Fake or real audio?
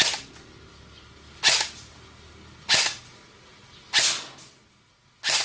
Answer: real